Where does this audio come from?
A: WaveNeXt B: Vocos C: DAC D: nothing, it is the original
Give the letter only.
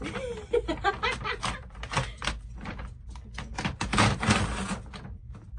D